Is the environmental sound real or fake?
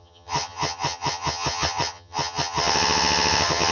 fake